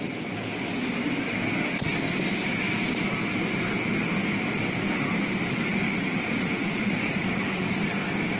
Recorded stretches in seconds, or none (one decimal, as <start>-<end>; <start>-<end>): 0.0-5.7; 7.7-8.4